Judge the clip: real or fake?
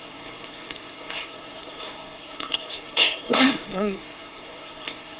fake